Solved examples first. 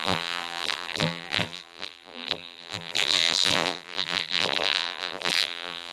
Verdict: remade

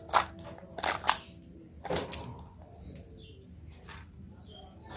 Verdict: recorded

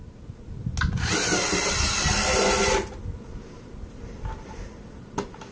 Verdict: recorded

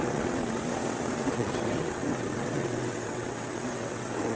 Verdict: remade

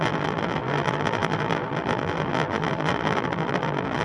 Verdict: remade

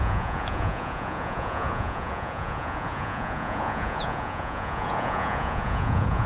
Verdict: remade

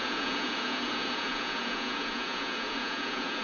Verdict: remade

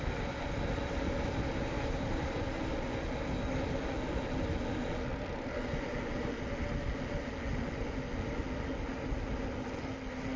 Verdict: recorded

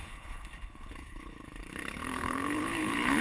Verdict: remade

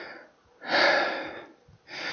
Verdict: recorded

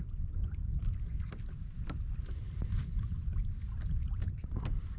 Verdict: recorded